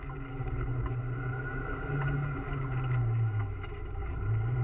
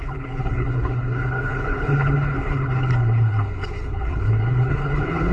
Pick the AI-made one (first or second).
second